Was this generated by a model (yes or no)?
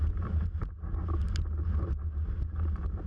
no